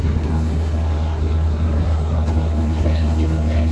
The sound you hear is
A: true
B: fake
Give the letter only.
B